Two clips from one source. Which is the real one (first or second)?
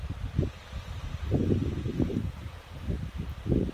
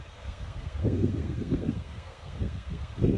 first